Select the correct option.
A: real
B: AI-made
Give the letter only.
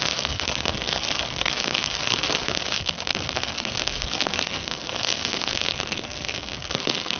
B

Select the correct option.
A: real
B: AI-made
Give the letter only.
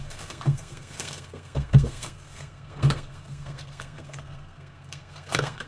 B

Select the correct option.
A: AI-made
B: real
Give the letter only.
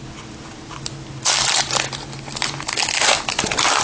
B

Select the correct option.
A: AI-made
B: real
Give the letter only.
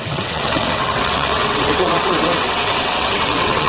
A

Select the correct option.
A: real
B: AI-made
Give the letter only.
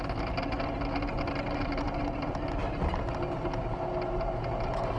A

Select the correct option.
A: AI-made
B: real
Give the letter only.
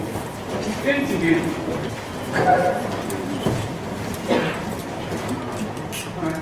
B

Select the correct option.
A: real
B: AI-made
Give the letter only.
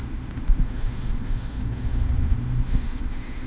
B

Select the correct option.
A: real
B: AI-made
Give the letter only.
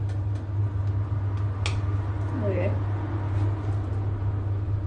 A